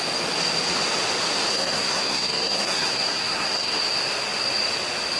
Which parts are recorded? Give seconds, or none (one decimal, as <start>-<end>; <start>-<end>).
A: 0.0-1.5; 3.8-5.2